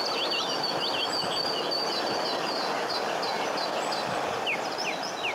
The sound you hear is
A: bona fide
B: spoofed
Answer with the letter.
A